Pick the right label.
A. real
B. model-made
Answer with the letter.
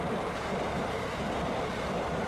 B